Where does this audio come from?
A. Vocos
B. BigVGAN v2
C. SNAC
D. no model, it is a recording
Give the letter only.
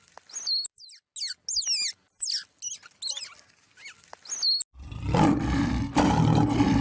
D